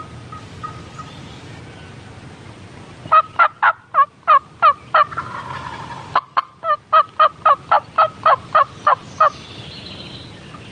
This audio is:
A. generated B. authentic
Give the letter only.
B